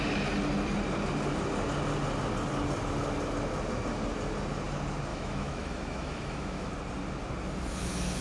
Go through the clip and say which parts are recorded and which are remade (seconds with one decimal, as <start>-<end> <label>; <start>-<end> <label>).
0.0-5.1 recorded; 5.1-6.7 remade; 6.7-8.2 recorded